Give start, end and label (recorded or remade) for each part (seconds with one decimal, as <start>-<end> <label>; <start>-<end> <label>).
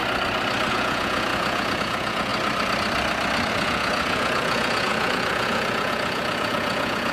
0.0-0.7 recorded; 0.7-2.3 remade; 2.3-3.5 recorded; 3.5-7.1 remade